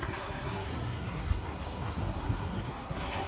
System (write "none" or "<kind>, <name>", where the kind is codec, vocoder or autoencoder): codec, SNAC